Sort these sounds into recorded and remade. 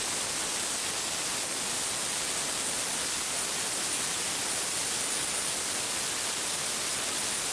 recorded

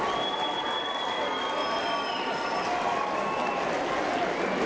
recorded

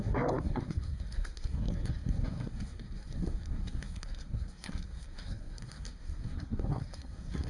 remade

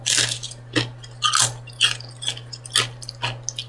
recorded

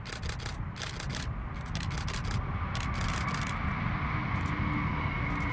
recorded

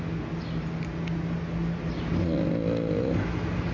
recorded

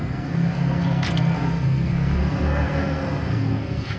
remade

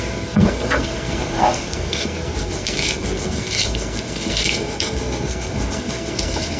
remade